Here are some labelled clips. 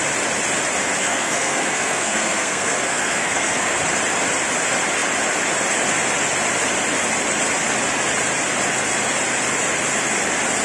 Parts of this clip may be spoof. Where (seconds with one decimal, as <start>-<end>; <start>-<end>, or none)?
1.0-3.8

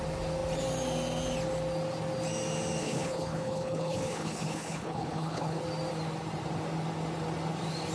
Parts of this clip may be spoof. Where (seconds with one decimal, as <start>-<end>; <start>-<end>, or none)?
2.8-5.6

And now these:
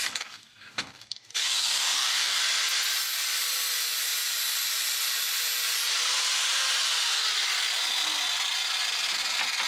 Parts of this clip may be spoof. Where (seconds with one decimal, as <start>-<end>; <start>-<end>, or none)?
0.0-2.4

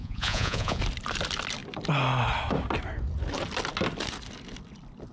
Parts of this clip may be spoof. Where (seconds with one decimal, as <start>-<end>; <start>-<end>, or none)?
0.0-0.8